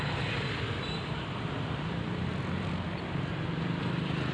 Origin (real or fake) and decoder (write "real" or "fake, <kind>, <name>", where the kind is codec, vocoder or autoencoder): fake, vocoder, BigVGAN v2